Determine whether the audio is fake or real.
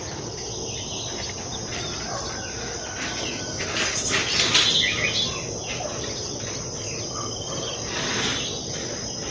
real